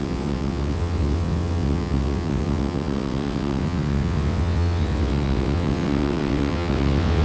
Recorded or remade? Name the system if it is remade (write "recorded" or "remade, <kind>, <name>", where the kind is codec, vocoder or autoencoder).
remade, vocoder, WaveNeXt